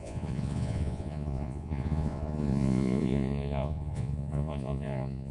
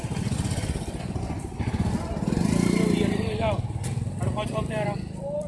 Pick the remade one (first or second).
first